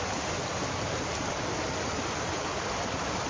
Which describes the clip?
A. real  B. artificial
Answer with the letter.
A